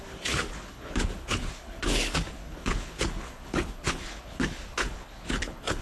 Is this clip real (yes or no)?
no